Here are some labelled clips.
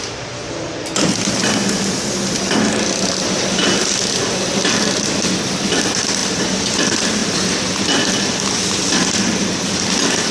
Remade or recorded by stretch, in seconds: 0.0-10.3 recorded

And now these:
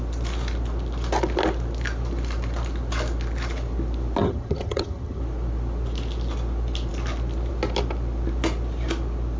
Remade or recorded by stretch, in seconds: 0.0-4.2 recorded; 4.2-5.2 remade; 5.2-9.4 recorded

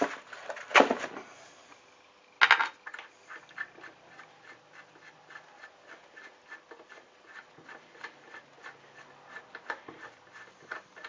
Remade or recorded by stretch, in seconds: 0.0-11.1 recorded

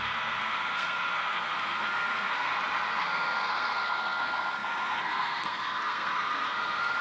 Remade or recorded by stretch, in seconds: 0.0-2.5 remade; 2.5-3.0 recorded; 3.0-7.0 remade

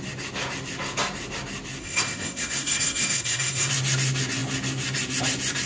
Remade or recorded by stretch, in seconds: 0.0-1.8 recorded; 1.8-3.7 remade; 3.7-5.7 recorded

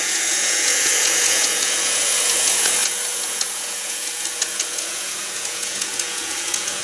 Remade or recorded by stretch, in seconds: 0.0-6.8 remade

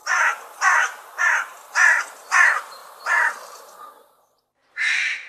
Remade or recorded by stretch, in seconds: 0.0-5.3 remade